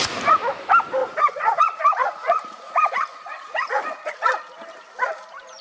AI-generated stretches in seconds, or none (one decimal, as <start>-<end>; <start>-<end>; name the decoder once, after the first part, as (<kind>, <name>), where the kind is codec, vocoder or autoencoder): 1.0-4.4 (vocoder, Vocos)